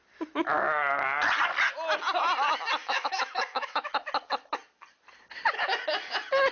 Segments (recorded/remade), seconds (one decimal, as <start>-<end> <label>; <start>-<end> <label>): 0.0-2.8 recorded; 2.8-3.9 remade; 3.9-6.5 recorded